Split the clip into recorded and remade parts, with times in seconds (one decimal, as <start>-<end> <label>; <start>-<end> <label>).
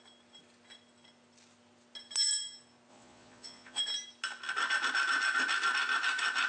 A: 0.0-2.9 recorded; 2.9-3.8 remade; 3.8-6.5 recorded